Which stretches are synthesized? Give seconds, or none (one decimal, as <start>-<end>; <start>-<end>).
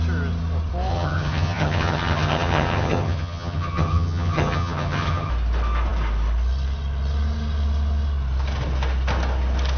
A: 0.9-5.3